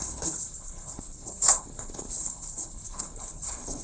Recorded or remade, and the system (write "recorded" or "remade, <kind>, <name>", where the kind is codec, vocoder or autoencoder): remade, codec, HILCodec